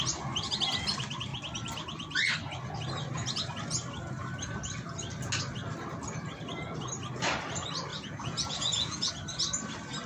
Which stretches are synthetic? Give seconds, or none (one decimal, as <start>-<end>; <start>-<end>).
7.9-9.1